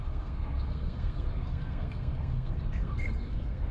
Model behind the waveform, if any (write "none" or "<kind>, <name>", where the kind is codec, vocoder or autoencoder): codec, SNAC